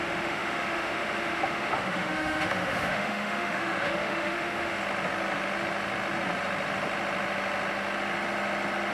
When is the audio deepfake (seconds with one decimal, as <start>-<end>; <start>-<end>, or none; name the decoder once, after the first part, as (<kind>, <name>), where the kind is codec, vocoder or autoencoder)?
0.0-4.8 (autoencoder, DAC-VAE)